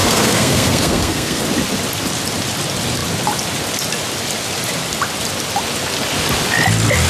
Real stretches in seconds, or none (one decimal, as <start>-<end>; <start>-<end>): 1.4-7.1